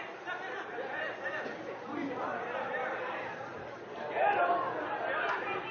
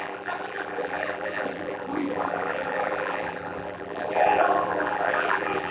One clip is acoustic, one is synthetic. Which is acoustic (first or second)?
first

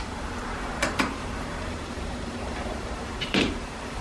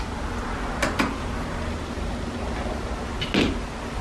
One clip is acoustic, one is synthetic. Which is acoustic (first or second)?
second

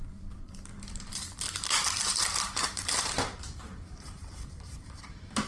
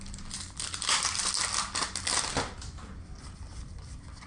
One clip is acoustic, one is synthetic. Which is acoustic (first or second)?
second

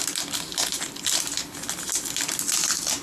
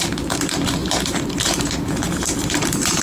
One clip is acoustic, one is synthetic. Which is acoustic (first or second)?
first